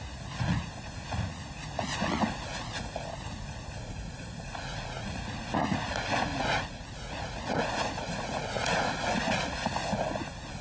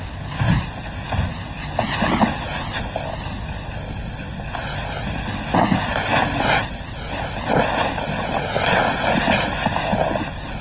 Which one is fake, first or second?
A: first